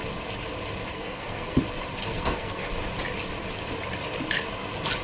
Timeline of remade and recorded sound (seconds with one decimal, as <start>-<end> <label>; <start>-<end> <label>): 0.0-0.9 recorded; 0.9-1.6 remade; 1.6-2.0 recorded; 2.0-2.7 remade; 2.7-5.0 recorded